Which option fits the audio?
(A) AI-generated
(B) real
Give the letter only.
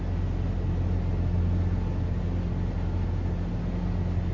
B